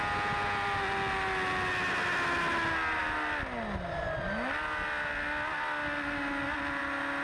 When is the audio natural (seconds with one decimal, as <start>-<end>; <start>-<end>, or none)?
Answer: 0.0-7.2